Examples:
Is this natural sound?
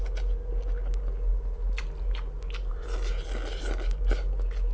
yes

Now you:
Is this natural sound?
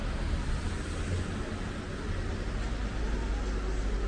yes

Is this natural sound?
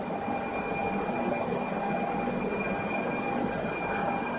yes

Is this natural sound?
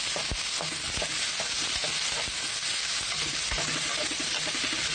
yes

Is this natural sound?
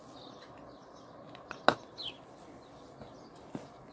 yes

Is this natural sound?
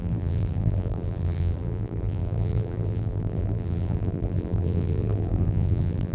no